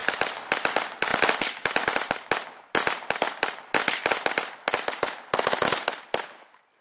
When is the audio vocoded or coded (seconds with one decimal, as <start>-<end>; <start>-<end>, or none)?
0.0-0.7